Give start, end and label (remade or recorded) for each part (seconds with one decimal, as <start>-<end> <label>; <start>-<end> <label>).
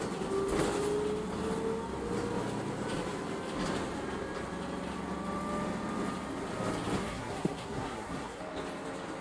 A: 0.0-7.0 recorded; 7.0-8.4 remade; 8.4-9.2 recorded